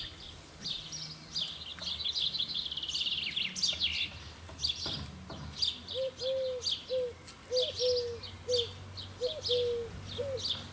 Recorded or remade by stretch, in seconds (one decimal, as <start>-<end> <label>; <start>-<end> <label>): 0.0-10.7 recorded